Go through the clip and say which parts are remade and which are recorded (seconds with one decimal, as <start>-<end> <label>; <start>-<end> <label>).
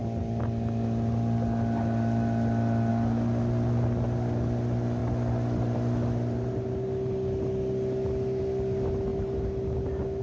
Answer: 0.0-10.2 recorded